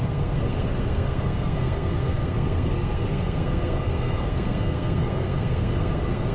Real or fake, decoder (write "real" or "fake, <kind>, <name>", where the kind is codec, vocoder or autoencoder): fake, codec, SNAC